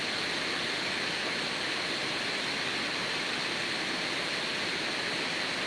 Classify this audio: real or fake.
real